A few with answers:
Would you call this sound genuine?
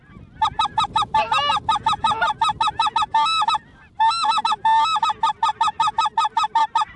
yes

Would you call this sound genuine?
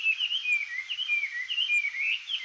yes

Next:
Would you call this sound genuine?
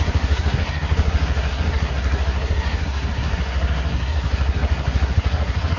no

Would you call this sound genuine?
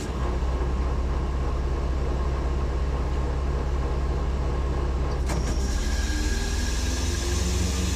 yes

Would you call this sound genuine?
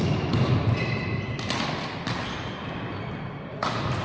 yes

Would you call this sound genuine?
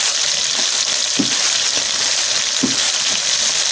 yes